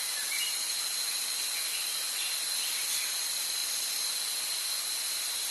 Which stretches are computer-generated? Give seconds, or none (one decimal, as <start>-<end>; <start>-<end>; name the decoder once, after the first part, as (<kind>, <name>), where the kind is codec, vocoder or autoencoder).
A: none